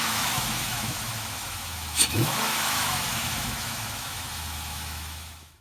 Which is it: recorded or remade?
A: remade